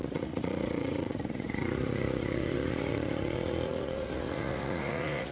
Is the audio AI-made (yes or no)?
yes